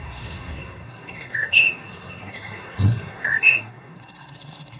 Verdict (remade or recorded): remade